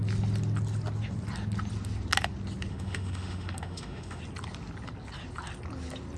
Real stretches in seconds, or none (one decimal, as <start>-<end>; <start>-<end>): 0.0-2.7; 4.2-6.2